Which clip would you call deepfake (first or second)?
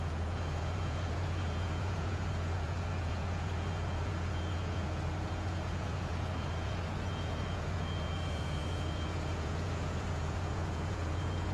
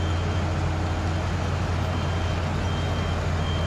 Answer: first